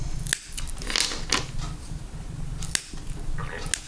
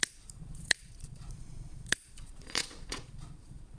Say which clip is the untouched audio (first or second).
first